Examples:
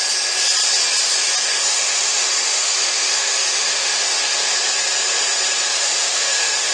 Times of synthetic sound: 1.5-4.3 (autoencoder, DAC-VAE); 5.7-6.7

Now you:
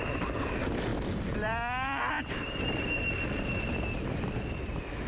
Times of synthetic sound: none

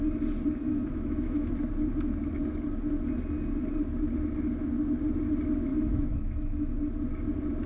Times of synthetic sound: 0.6-1.5 (autoencoder, DAC-VAE); 5.7-6.7

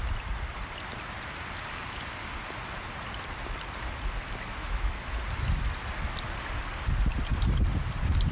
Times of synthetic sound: 4.6-5.2 (autoencoder, DAC-VAE)

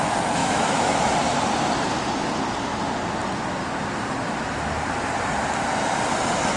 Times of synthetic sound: 0.4-1.1 (autoencoder, DAC-VAE)

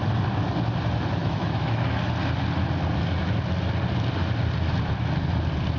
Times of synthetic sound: 1.2-2.1 (autoencoder, DAC-VAE)